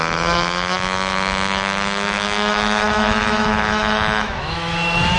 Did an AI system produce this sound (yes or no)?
yes